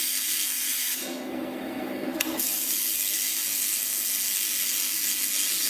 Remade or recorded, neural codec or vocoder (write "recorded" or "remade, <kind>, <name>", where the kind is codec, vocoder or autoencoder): remade, codec, SNAC